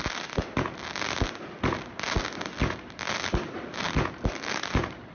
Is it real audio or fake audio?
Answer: real